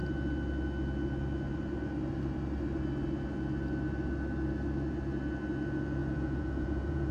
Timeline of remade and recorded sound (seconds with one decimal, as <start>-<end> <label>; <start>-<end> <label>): 0.0-6.0 recorded; 6.0-7.1 remade